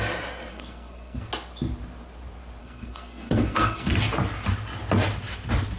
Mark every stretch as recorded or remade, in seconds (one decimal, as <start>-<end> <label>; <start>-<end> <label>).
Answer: 0.0-0.5 recorded; 0.5-1.3 remade; 1.3-2.6 recorded; 2.6-3.9 remade; 3.9-5.8 recorded